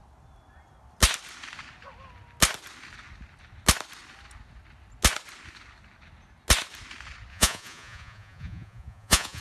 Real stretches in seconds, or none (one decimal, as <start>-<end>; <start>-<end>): 0.0-7.3